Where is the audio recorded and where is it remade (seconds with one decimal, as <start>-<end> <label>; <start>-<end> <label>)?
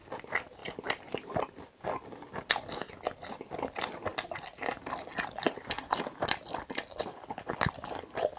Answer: 0.0-6.9 recorded; 6.9-7.7 remade; 7.7-8.4 recorded